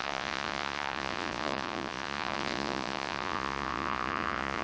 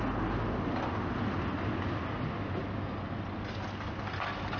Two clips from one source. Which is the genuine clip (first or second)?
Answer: second